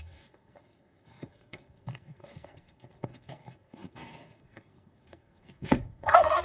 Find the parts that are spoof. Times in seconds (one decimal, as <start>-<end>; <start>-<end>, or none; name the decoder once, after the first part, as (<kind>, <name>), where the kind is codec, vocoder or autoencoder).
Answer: 0.0-6.4 (codec, SNAC)